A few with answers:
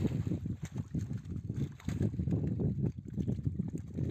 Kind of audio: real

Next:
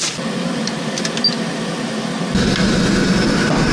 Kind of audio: real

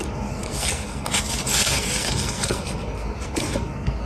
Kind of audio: fake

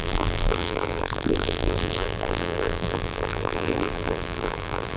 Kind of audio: fake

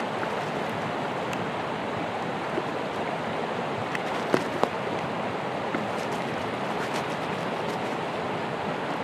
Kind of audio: real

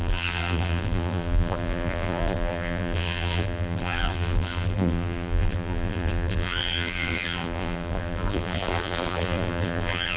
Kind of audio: fake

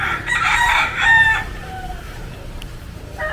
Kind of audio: fake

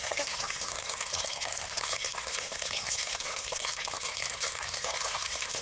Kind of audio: fake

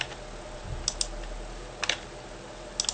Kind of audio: real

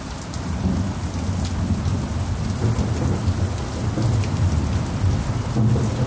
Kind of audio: real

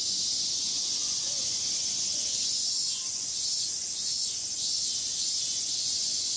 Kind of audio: fake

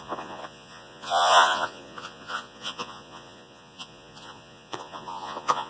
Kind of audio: fake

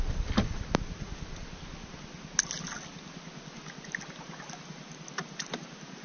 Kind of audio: real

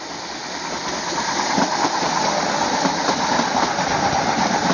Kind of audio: real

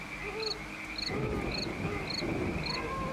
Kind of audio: real